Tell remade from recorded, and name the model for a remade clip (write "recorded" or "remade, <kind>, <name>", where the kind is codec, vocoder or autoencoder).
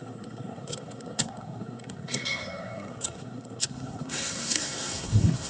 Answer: remade, codec, SNAC